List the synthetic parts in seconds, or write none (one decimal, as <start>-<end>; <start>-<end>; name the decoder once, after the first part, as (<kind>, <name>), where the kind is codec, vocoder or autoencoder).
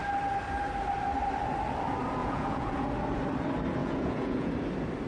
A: 2.2-2.9 (vocoder, Vocos); 3.8-4.5